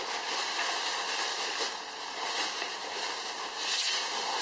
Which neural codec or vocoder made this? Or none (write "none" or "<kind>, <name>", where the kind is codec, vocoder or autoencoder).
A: none